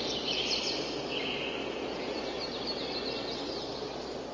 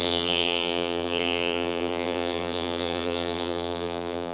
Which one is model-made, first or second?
second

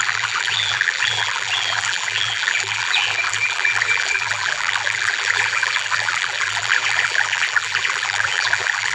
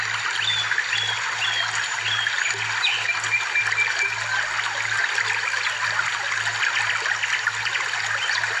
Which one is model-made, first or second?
first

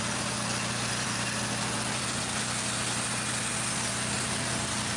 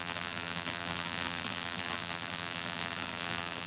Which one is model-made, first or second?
second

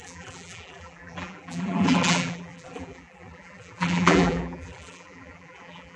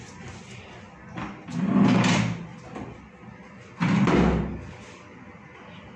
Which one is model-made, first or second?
first